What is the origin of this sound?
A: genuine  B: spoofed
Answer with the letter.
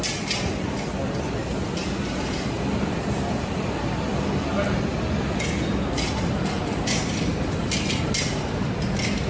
A